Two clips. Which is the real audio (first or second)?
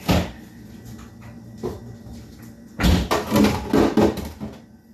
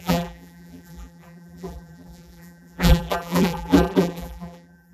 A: first